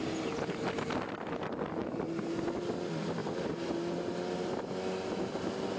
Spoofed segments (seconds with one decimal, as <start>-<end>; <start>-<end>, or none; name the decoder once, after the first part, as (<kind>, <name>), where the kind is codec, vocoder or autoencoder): 1.8-2.6 (vocoder, BigVGAN v2); 3.2-3.7